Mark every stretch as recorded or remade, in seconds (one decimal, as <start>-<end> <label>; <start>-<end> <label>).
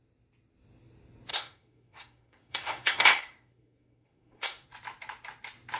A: 0.0-1.3 recorded; 1.3-4.7 remade; 4.7-5.8 recorded